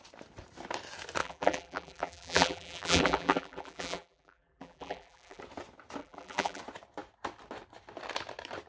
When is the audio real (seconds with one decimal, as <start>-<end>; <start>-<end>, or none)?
0.0-1.2; 5.4-6.0; 6.6-8.7

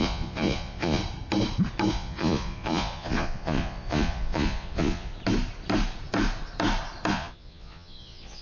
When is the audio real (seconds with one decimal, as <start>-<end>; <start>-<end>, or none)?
1.0-1.9; 5.1-7.1

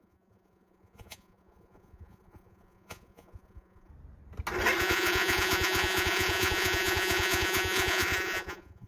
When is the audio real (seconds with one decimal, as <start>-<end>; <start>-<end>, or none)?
3.9-4.8

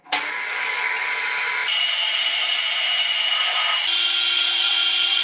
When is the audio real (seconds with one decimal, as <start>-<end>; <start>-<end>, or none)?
1.1-5.2

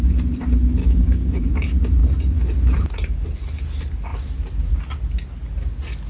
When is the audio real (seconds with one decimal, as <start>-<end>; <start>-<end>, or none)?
0.0-0.8; 1.4-6.1